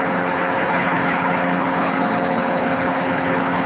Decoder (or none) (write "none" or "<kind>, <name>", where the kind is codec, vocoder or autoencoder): codec, HILCodec